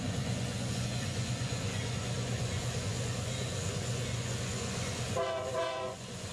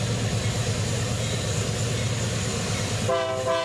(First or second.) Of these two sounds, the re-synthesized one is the first